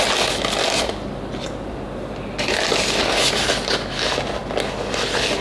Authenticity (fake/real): real